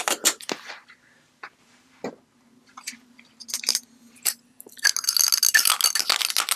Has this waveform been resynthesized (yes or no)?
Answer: no